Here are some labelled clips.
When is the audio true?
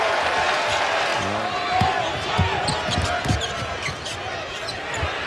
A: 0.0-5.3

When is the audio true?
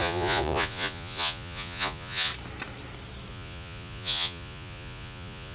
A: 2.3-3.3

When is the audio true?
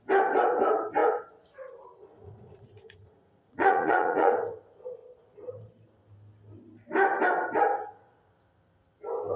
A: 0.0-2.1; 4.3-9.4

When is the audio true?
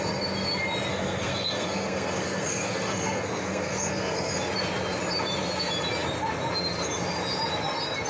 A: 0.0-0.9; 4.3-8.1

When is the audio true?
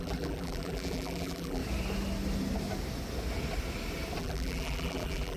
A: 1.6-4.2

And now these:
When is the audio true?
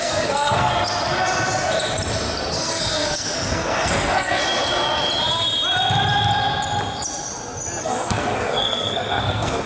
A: 0.7-2.5; 4.4-7.8